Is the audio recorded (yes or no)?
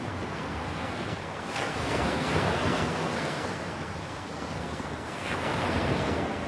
no